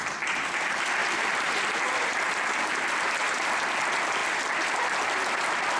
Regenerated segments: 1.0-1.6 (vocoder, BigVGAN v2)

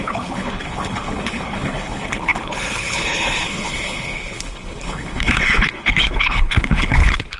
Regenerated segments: 0.0-7.4 (codec, HILCodec)

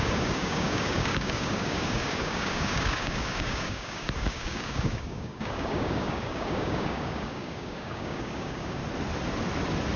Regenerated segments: 0.0-8.8 (codec, DAC)

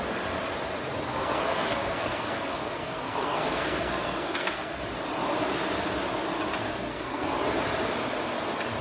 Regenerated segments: 1.1-4.8 (codec, SNAC); 6.6-7.3